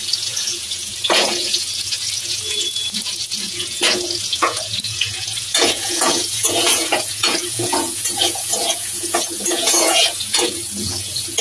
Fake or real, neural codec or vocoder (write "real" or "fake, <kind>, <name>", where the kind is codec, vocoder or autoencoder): fake, vocoder, Vocos